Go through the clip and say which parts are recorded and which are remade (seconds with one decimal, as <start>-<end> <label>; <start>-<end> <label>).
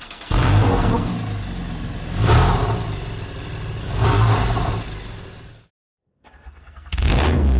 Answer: 0.0-1.1 remade; 1.1-3.8 recorded; 3.8-4.3 remade; 4.3-5.5 recorded; 5.5-7.6 remade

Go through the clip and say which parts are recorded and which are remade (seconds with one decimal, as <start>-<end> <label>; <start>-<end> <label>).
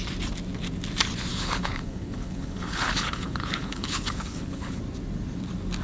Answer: 0.0-1.3 recorded; 1.3-4.8 remade; 4.8-5.8 recorded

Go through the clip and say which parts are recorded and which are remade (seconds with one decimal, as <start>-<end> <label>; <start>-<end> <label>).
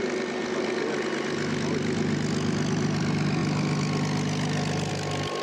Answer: 0.0-5.4 recorded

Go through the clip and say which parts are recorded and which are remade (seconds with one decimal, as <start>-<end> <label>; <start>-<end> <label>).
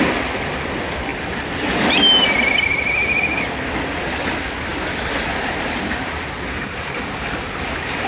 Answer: 0.0-8.1 recorded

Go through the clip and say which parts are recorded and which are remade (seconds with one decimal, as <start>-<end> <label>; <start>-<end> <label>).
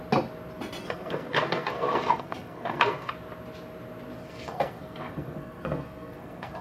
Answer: 0.0-0.8 recorded; 0.8-3.1 remade; 3.1-4.2 recorded; 4.2-6.6 remade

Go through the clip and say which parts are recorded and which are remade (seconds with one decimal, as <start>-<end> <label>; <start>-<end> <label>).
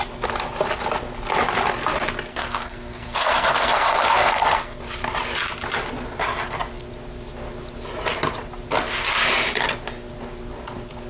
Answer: 0.0-2.3 recorded; 2.3-4.8 remade; 4.8-11.1 recorded